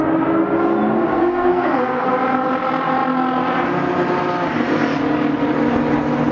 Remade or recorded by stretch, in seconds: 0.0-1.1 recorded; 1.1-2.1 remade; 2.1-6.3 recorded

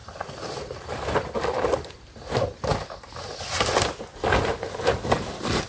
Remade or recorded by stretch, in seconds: 0.0-5.7 recorded

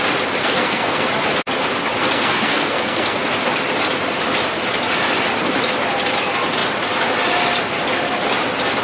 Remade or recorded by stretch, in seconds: 0.0-0.4 recorded; 0.4-1.1 remade; 1.1-2.0 recorded; 2.0-3.2 remade; 3.2-8.8 recorded

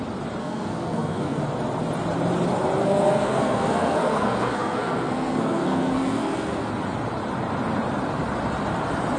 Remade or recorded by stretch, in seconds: 0.0-0.4 recorded; 0.4-1.4 remade; 1.4-2.8 recorded; 2.8-6.7 remade; 6.7-9.2 recorded